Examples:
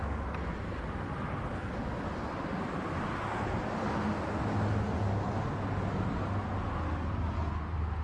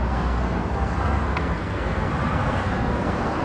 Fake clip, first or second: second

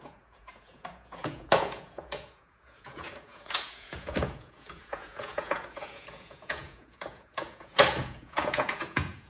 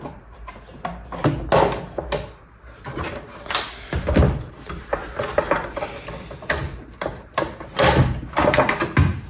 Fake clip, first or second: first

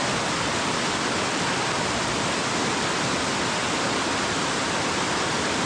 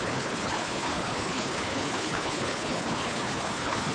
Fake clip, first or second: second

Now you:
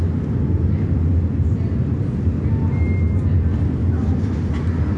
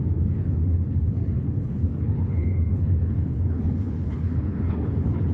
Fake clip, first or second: second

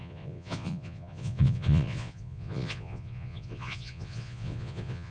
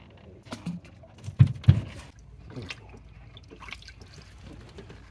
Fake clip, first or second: first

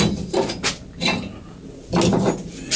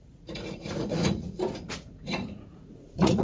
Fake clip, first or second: second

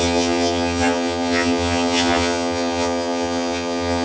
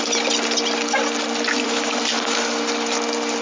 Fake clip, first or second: first